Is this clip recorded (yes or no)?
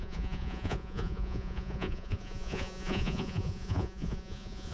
no